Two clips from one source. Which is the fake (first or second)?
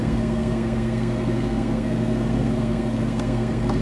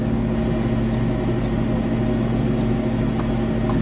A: first